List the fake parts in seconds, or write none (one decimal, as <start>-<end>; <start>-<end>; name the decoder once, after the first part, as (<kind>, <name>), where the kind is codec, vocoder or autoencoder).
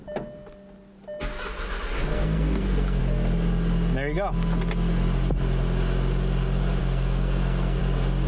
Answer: 2.1-3.0 (codec, SNAC); 6.8-7.8